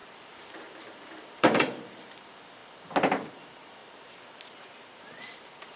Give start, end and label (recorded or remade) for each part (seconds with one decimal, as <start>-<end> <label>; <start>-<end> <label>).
0.0-2.1 remade; 2.1-3.8 recorded; 3.8-5.8 remade